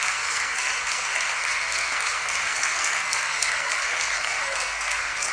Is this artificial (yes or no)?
yes